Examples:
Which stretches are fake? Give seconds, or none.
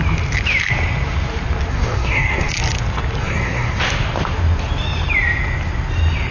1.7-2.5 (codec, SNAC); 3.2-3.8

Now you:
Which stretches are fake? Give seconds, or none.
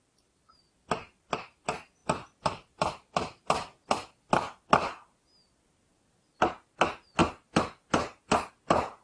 none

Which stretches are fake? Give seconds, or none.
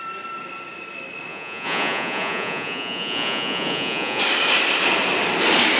1.3-4.2 (vocoder, Vocos)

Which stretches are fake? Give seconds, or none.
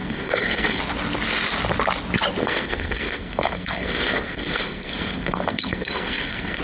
0.0-0.8 (codec, SNAC); 2.4-6.6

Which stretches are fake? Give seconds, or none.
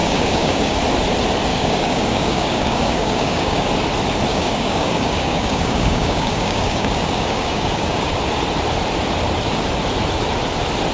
0.0-0.8 (codec, DAC); 1.5-3.7; 4.3-8.1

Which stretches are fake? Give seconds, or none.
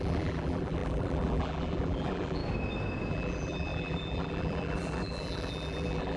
0.0-2.4 (vocoder, BigVGAN v2); 3.1-6.2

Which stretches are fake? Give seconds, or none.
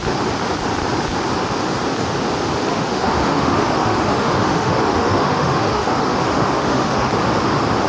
2.7-7.1 (autoencoder, DAC-VAE)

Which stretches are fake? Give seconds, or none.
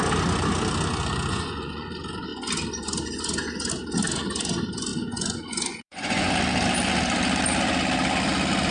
1.3-1.9 (vocoder, Vocos); 4.9-6.3